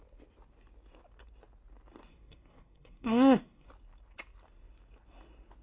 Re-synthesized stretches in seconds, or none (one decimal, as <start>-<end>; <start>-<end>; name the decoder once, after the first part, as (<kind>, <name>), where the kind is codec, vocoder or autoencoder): 2.1-3.7 (codec, SNAC)